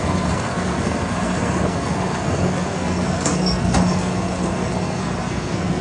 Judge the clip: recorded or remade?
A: remade